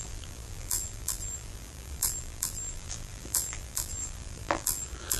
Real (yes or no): no